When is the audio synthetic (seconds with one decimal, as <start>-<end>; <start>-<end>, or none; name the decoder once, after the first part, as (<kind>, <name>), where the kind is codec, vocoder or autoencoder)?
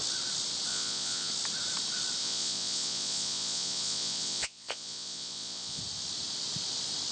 0.7-1.3 (vocoder, Vocos); 2.2-5.8